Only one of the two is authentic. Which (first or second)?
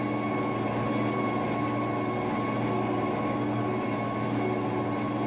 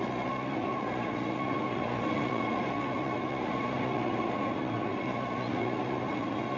first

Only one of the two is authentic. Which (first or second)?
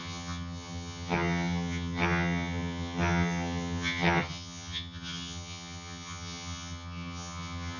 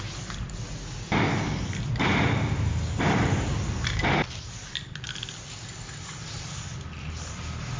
second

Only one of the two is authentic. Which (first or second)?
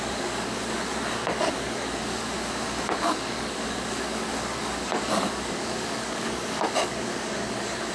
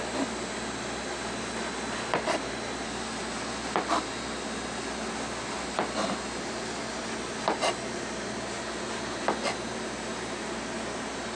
second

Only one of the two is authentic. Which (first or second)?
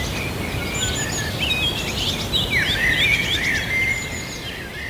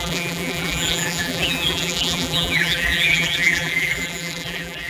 first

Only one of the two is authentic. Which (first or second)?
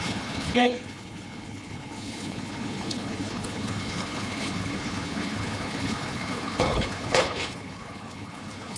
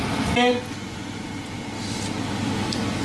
second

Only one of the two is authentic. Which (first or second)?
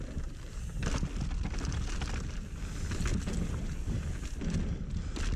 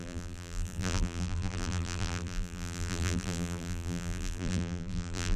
first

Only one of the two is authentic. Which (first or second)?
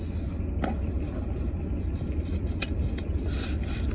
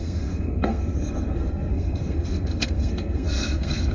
first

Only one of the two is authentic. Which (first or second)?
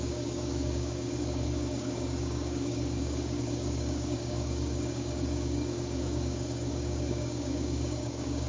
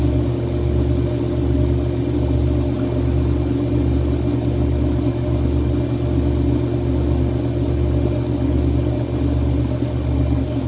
second